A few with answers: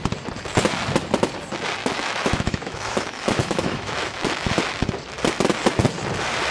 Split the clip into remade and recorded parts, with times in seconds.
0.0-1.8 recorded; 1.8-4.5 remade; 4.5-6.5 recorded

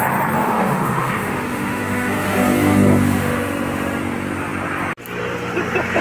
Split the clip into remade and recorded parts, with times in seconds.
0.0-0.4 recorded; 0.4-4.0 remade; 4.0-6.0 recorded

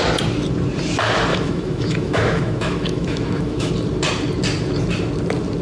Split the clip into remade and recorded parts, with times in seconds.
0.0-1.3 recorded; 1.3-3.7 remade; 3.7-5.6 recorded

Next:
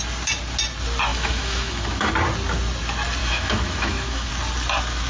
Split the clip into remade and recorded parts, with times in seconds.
0.0-1.1 recorded; 1.1-2.1 remade; 2.1-3.2 recorded; 3.2-4.3 remade; 4.3-5.1 recorded

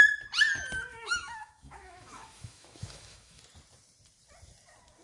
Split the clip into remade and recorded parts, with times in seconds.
0.0-0.9 recorded; 0.9-3.4 remade; 3.4-5.0 recorded

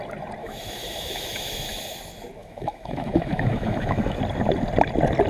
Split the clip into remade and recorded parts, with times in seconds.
0.0-0.4 recorded; 0.4-1.8 remade; 1.8-2.4 recorded; 2.4-4.2 remade; 4.2-5.3 recorded